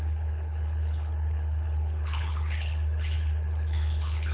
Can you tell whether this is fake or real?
fake